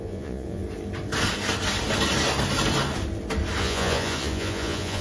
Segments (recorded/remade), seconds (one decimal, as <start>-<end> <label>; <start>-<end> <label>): 0.0-0.6 remade; 0.6-3.6 recorded; 3.6-5.0 remade